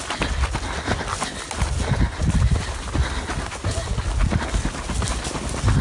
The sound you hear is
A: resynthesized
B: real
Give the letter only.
B